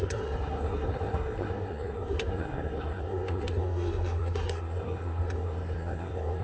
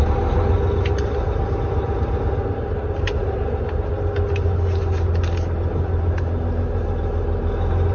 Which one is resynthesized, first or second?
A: first